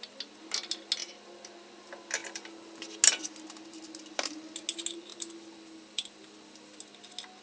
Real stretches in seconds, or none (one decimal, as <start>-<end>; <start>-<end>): 0.0-2.2; 2.8-5.1; 6.8-7.4

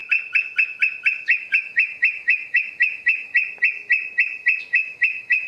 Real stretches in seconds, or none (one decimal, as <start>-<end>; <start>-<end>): 0.0-1.4; 3.3-4.6

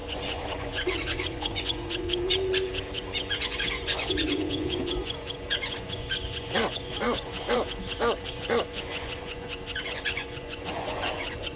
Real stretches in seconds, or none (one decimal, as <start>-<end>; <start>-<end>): none